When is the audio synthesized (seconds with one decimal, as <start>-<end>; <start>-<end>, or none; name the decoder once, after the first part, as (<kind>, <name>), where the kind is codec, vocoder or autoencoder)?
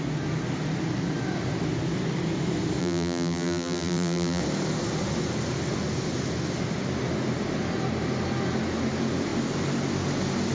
2.8-4.4 (vocoder, BigVGAN v2)